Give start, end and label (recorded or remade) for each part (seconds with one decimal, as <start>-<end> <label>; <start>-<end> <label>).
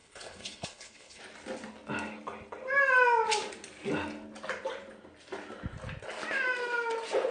0.0-1.2 remade; 1.2-7.3 recorded